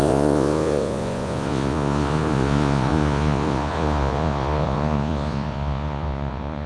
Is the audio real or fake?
fake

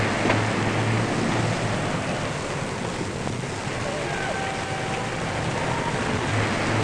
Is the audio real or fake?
real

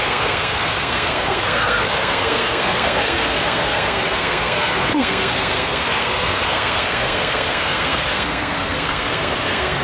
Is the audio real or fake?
fake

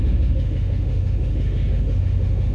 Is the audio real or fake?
fake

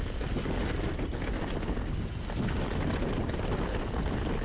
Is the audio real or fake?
real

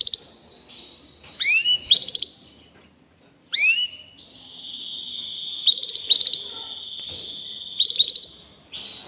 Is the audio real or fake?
real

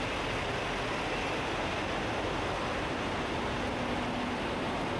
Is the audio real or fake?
real